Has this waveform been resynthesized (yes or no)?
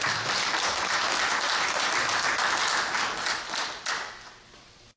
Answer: no